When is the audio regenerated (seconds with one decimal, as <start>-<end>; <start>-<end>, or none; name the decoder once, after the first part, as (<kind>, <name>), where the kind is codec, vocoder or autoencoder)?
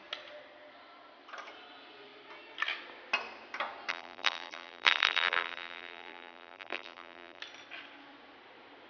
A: 3.9-7.4 (vocoder, BigVGAN v2)